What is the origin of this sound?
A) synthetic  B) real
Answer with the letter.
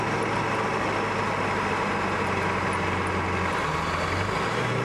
B